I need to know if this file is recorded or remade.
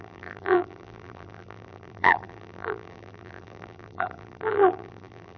remade